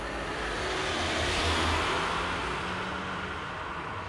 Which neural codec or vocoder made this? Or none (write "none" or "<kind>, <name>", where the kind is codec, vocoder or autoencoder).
none